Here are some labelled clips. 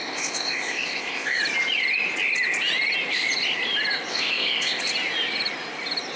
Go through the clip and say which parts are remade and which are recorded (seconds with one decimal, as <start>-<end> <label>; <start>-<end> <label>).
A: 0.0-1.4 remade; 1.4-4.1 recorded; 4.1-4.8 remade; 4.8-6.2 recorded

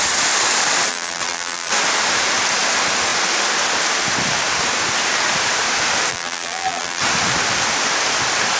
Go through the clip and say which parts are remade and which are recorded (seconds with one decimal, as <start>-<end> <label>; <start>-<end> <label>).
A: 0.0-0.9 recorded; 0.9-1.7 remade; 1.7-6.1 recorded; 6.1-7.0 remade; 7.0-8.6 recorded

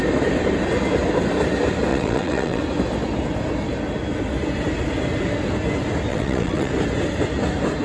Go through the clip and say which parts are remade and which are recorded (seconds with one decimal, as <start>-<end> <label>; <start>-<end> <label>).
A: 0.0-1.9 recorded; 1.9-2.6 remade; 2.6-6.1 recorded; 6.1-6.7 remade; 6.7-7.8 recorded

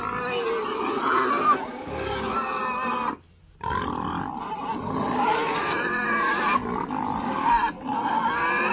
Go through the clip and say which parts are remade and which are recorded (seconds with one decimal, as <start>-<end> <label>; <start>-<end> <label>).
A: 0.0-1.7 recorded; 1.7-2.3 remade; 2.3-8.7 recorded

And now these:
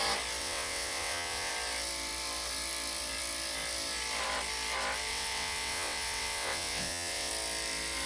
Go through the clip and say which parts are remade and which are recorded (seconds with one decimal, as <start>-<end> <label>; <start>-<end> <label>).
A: 0.0-0.4 recorded; 0.4-1.5 remade; 1.5-5.1 recorded; 5.1-7.3 remade; 7.3-8.1 recorded

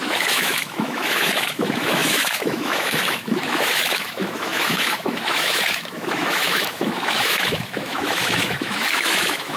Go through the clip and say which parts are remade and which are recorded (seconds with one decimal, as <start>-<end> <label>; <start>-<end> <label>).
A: 0.0-9.6 remade

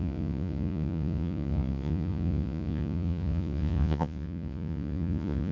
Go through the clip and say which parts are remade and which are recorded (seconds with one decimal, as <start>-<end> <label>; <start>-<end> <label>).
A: 0.0-5.5 remade

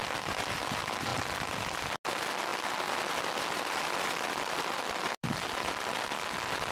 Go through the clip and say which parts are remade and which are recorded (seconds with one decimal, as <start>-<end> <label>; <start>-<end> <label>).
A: 0.0-6.7 recorded